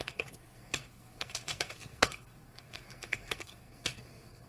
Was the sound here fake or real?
fake